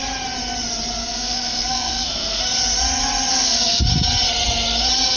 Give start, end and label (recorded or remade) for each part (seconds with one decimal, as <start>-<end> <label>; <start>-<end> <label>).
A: 0.0-1.0 recorded; 1.0-2.4 remade; 2.4-3.3 recorded; 3.3-3.8 remade; 3.8-5.2 recorded